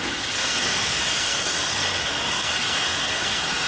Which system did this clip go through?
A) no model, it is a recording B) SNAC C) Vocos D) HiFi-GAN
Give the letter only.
B